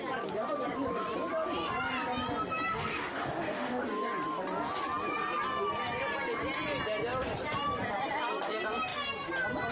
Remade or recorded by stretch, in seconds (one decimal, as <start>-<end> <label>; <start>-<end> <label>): 0.0-2.7 recorded; 2.7-3.8 remade; 3.8-9.7 recorded